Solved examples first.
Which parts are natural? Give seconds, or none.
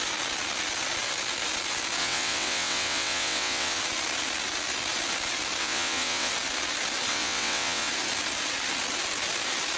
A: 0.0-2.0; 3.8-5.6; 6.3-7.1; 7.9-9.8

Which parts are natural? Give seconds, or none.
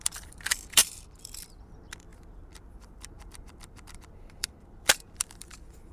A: none